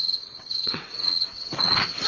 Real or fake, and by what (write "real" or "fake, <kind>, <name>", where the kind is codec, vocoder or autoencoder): fake, vocoder, WaveNeXt